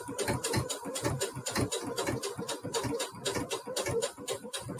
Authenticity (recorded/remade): remade